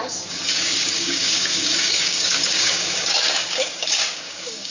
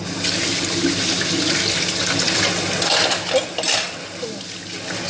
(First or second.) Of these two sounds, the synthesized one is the first